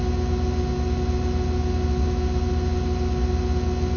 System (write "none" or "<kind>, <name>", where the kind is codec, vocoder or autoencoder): none